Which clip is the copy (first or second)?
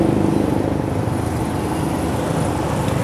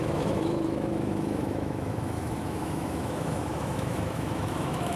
second